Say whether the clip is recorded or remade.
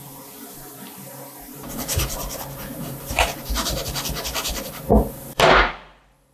remade